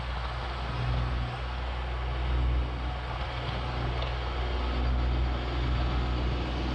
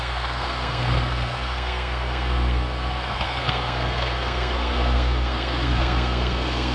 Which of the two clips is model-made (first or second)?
second